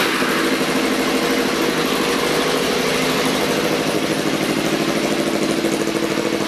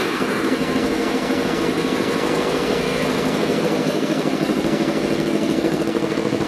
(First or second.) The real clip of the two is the first